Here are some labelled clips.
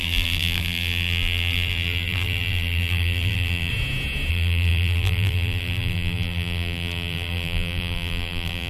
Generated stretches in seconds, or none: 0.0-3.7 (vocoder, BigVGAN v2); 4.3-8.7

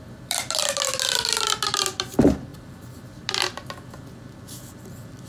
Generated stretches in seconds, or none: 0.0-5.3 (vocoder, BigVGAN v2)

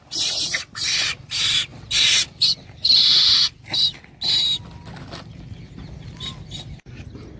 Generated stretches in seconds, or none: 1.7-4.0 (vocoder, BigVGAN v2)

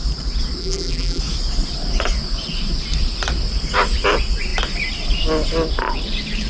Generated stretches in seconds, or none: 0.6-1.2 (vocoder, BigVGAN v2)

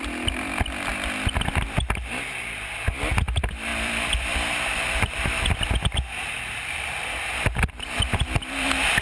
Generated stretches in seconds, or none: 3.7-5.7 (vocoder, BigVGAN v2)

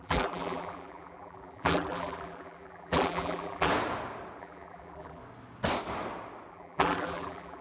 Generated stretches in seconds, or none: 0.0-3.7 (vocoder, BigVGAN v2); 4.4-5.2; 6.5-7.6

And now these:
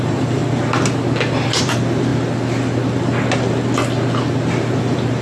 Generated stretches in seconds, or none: 0.0-0.4 (vocoder, BigVGAN v2); 1.6-2.1; 4.7-5.2

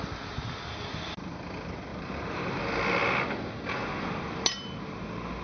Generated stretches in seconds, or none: 1.9-2.6 (vocoder, BigVGAN v2)